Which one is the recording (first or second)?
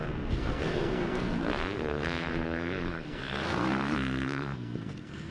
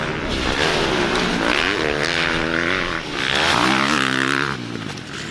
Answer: second